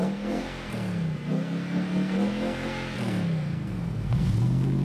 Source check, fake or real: fake